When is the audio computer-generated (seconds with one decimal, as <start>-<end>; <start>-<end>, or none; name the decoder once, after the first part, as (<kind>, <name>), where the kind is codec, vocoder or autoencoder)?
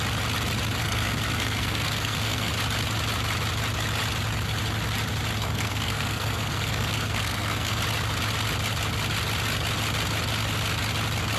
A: 0.8-2.5 (codec, SNAC); 5.4-7.8